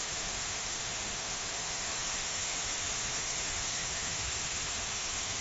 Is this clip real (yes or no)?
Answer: no